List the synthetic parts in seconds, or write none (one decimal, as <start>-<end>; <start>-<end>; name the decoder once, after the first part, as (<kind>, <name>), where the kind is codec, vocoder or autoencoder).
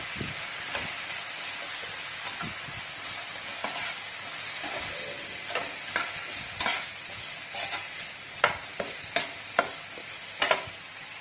none